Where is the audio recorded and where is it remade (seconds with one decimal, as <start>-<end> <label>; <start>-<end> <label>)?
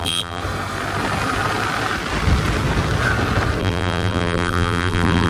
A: 0.0-0.4 remade; 0.4-3.6 recorded; 3.6-5.3 remade